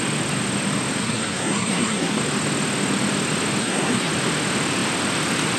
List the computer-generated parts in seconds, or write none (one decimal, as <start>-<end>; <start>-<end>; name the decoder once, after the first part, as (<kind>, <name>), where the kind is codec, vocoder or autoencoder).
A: 1.0-2.2 (codec, SNAC); 3.6-4.1